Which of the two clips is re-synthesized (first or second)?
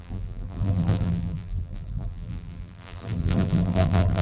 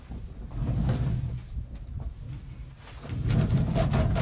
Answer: first